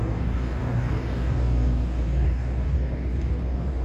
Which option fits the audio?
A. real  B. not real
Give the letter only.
B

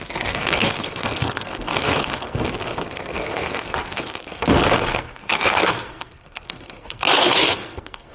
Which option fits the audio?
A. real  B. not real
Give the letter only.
B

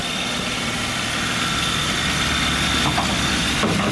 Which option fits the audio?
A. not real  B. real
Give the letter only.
B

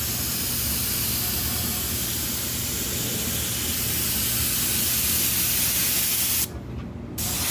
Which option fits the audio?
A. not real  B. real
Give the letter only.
B